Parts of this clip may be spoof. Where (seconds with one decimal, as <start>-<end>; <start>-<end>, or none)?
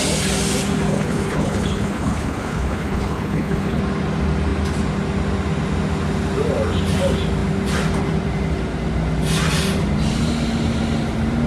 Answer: 0.9-3.8